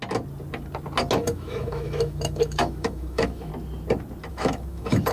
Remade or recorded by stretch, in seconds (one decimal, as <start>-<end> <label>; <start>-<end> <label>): 0.0-1.2 recorded; 1.2-3.5 remade; 3.5-4.3 recorded; 4.3-5.1 remade